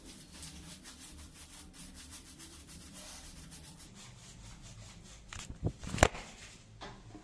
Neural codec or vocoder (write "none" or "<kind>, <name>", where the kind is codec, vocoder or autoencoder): vocoder, BigVGAN v2